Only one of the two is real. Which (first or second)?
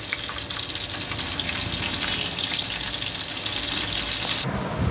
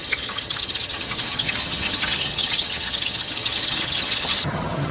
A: first